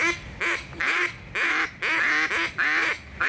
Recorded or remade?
recorded